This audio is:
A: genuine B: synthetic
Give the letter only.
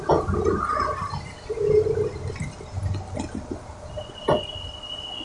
A